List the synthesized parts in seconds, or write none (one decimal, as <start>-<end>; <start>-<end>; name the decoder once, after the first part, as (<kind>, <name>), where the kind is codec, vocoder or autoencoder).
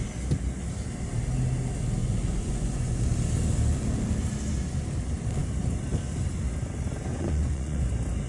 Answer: 2.0-3.0 (vocoder, Vocos); 7.1-7.9